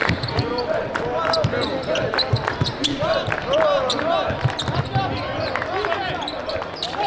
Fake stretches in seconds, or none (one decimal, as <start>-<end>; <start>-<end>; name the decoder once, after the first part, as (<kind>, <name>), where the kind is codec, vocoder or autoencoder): 0.0-0.8 (vocoder, BigVGAN v2)